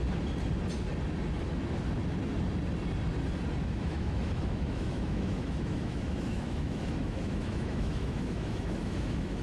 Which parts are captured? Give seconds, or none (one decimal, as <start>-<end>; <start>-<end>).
0.0-3.6